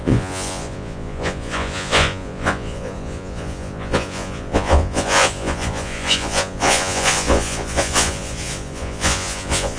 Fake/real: fake